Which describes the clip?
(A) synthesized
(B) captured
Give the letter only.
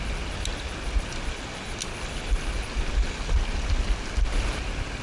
B